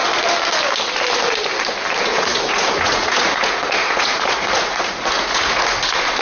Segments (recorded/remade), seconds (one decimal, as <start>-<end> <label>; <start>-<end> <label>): 0.0-2.1 recorded; 2.1-5.8 remade; 5.8-6.2 recorded